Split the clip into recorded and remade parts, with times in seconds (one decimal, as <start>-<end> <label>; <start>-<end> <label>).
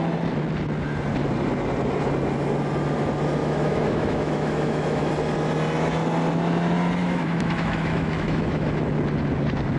0.0-3.4 recorded; 3.4-5.1 remade; 5.1-7.0 recorded; 7.0-8.7 remade; 8.7-9.8 recorded